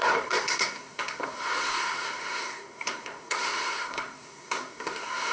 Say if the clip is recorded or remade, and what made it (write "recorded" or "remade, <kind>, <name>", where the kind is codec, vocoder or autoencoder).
remade, codec, SNAC